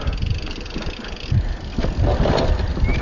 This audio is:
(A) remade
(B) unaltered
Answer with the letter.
B